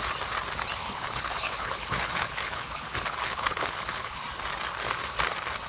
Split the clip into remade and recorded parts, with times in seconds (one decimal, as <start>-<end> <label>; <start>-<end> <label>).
0.0-0.8 recorded; 0.8-4.2 remade; 4.2-5.7 recorded